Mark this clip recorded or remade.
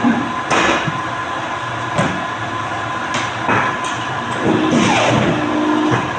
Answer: recorded